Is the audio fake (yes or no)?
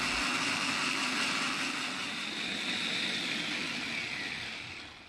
no